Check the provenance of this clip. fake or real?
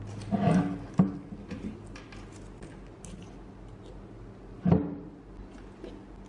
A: real